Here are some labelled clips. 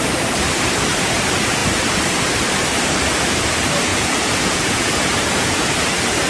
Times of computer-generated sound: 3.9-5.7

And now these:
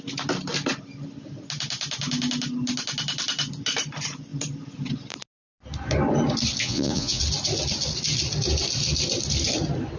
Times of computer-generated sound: 6.6-7.2

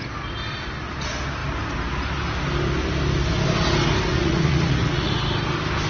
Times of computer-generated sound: 4.1-5.1